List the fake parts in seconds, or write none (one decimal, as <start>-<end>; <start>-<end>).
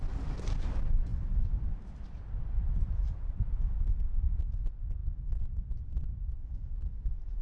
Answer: none